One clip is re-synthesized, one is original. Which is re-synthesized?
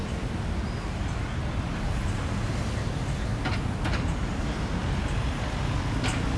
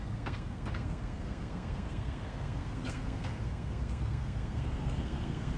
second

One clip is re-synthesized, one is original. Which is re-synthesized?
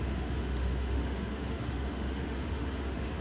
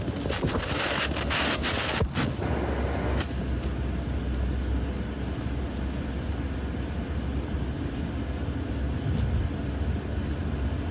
first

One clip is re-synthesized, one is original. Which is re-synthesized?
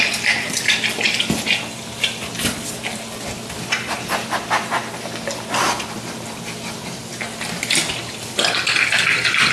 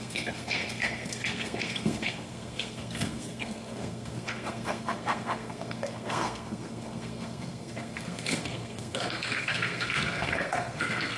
second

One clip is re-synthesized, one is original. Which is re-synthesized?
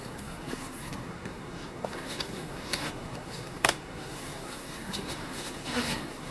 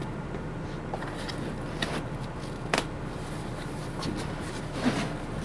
first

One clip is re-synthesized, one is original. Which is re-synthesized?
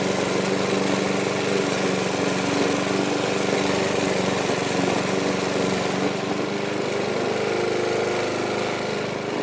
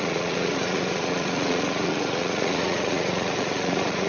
second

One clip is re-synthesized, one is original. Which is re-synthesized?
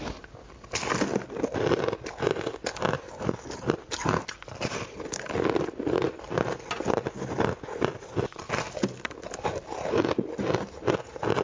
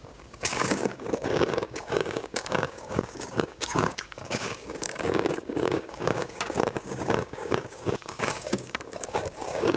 second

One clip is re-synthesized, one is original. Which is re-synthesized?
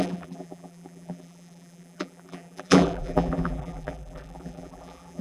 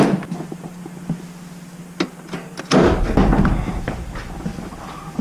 first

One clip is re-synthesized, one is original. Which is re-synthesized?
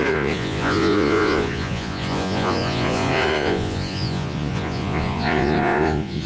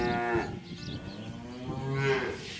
first